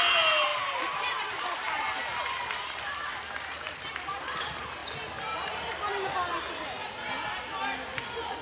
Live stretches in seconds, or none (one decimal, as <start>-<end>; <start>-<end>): 0.0-0.5; 2.4-8.4